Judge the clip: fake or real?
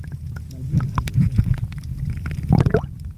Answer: real